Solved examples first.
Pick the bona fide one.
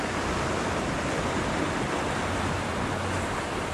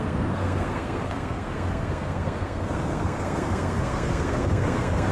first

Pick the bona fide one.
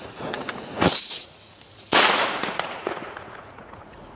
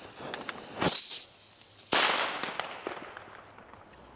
second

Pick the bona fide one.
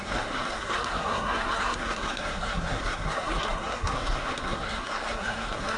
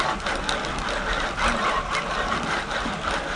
second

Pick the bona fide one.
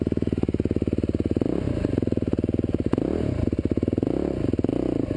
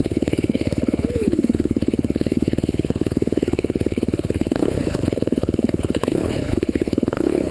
first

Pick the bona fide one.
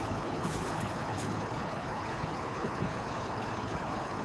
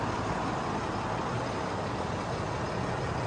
second